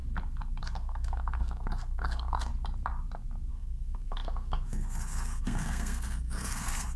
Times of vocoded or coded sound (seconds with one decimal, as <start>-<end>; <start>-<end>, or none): 0.6-2.5; 3.5-7.0